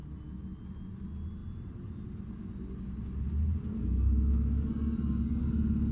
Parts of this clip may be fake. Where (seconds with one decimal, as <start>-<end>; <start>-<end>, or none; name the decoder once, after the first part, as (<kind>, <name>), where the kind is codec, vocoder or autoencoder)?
3.7-5.4 (codec, SNAC)